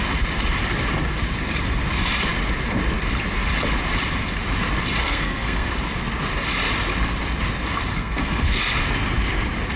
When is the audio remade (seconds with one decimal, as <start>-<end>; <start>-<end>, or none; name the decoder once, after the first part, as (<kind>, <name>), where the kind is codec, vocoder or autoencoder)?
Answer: 5.0-5.7 (codec, SNAC); 7.9-8.6